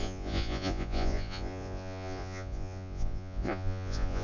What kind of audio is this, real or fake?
fake